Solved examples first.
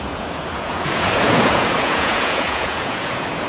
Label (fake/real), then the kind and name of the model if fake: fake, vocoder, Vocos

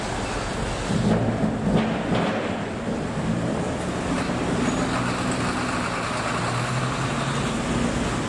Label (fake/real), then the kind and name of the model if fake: real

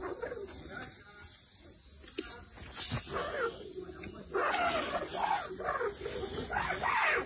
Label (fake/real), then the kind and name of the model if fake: real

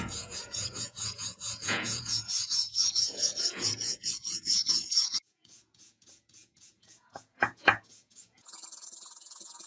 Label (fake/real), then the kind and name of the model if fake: fake, vocoder, Vocos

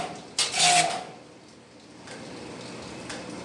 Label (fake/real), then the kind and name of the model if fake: real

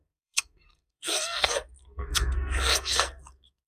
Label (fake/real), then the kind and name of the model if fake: fake, codec, SNAC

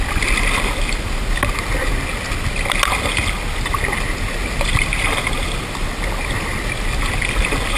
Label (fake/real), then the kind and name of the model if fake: real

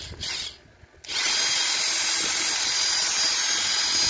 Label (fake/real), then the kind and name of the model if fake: real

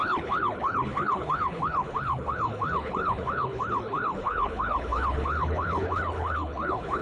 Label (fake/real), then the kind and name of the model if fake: fake, codec, HILCodec